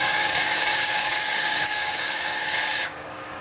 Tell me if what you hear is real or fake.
fake